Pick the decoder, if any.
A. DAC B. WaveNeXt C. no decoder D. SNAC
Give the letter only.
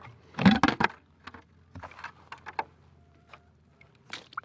C